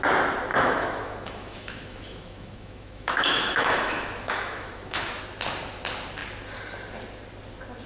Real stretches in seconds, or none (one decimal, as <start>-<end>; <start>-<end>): 0.0-0.5; 5.2-7.9

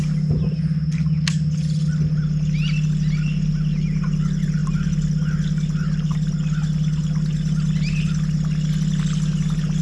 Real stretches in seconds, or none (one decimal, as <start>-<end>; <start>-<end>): 0.0-9.8

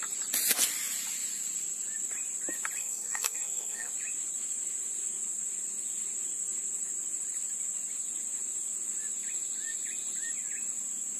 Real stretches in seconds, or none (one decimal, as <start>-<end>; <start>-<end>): 0.0-2.8; 3.9-11.2

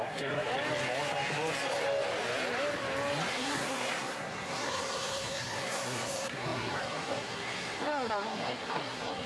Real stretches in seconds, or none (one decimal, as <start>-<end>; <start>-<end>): 0.5-3.3

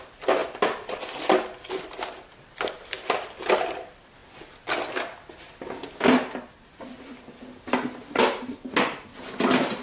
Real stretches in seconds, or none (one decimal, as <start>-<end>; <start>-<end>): 0.0-9.8

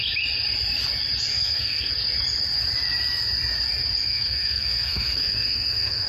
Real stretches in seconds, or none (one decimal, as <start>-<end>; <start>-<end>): 0.0-1.3; 1.9-4.1

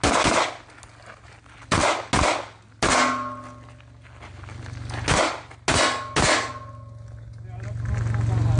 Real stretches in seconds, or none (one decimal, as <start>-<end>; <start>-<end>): 0.0-8.6